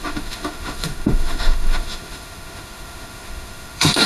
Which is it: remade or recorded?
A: remade